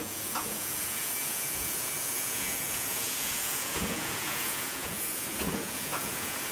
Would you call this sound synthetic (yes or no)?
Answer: yes